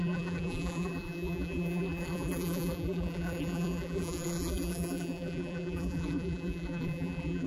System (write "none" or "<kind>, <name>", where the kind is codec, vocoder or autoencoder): vocoder, BigVGAN v2